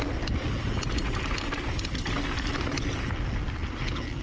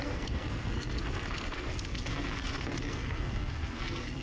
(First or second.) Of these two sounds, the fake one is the second